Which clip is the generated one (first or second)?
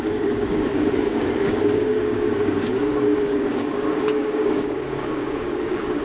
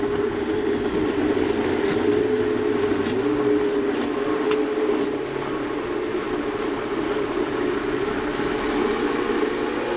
first